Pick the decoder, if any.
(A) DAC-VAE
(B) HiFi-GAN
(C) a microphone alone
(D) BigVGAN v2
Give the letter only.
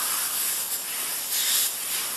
C